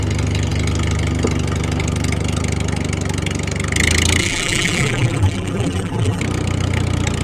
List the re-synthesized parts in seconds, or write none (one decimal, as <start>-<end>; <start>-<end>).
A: 4.2-6.2